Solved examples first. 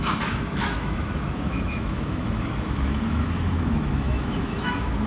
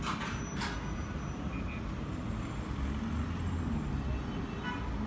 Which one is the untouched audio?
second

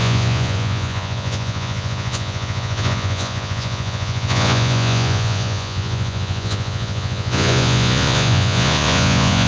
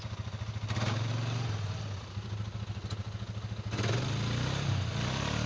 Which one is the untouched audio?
second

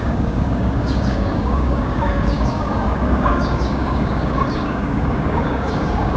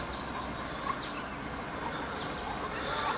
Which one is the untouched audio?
second